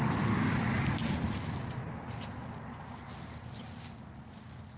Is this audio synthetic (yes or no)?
no